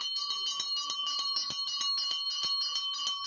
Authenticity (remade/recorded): recorded